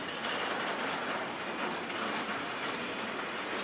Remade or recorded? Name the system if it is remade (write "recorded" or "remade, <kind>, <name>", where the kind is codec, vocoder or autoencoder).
recorded